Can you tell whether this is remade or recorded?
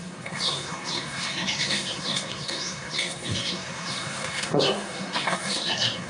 remade